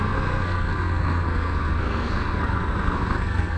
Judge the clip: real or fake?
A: fake